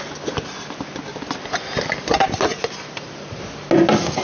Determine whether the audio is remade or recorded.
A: recorded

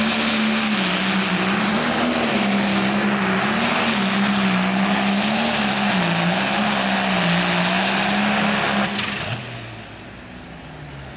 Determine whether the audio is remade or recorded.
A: recorded